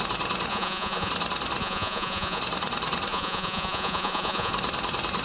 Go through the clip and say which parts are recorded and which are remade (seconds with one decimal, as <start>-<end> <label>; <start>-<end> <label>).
0.0-0.5 recorded; 0.5-1.1 remade; 1.1-1.6 recorded; 1.6-2.4 remade; 2.4-3.1 recorded; 3.1-4.5 remade; 4.5-5.2 recorded